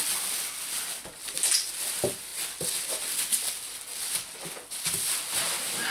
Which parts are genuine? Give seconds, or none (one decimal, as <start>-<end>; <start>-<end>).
2.3-5.9